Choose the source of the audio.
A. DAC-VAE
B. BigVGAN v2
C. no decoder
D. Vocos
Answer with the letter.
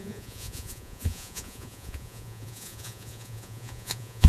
D